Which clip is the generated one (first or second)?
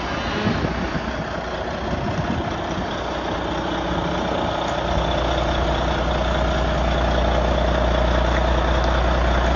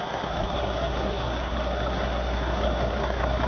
second